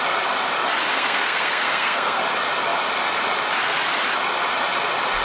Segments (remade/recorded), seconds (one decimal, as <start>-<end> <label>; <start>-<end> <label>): 0.0-0.9 recorded; 0.9-2.2 remade; 2.2-5.2 recorded